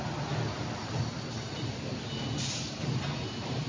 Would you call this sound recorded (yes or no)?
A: yes